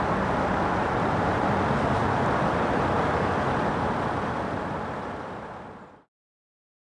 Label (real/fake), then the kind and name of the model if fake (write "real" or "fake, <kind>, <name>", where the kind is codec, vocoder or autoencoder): real